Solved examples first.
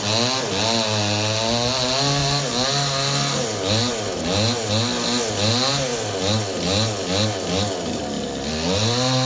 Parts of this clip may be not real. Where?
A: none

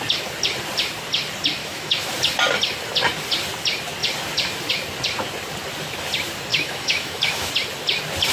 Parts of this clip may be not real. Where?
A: 1.6-2.1 (autoencoder, DAC-VAE); 6.5-7.5